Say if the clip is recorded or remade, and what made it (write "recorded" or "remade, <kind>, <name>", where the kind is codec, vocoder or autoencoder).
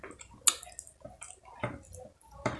recorded